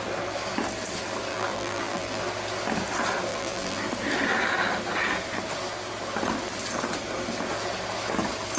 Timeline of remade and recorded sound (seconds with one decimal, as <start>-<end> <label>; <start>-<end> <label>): 0.0-1.3 recorded; 1.3-2.2 remade; 2.2-3.3 recorded; 3.3-3.8 remade; 3.8-8.6 recorded